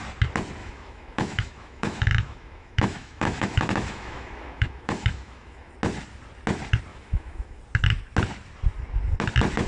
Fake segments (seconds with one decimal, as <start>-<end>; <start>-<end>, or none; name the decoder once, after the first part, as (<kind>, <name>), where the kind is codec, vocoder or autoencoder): 0.6-5.7 (autoencoder, DAC-VAE); 6.9-7.6